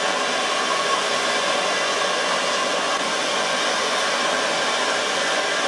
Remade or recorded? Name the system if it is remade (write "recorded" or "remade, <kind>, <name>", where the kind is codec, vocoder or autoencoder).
remade, vocoder, Vocos